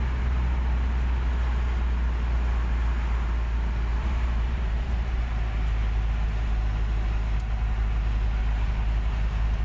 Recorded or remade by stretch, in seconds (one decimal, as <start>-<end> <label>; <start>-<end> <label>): 0.0-3.9 recorded; 3.9-5.3 remade; 5.3-9.6 recorded